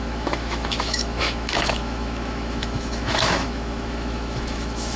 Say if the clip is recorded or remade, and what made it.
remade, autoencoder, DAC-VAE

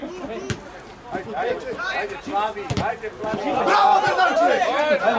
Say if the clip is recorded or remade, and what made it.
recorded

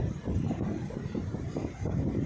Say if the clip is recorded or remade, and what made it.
recorded